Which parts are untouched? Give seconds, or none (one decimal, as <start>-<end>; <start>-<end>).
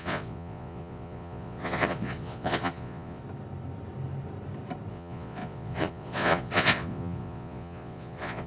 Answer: 3.2-4.9